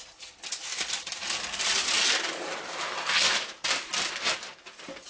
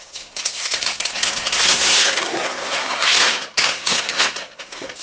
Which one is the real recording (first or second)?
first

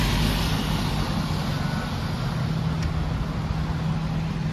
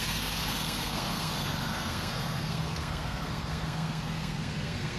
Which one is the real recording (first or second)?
first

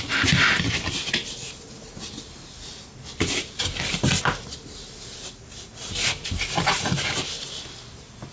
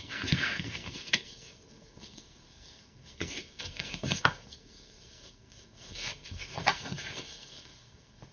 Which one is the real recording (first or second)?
first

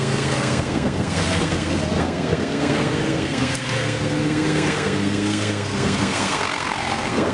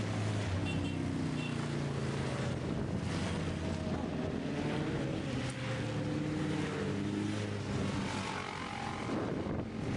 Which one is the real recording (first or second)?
second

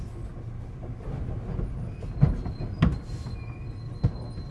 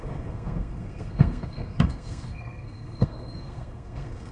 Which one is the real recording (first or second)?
first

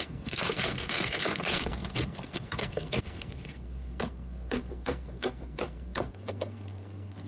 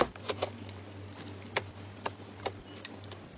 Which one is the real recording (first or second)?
second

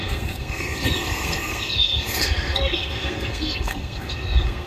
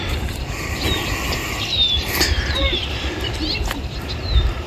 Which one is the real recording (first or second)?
second